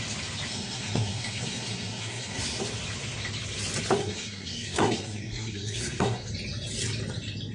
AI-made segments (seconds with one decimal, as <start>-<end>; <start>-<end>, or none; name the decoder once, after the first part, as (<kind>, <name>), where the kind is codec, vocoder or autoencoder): 0.5-2.6 (codec, SNAC); 4.0-6.3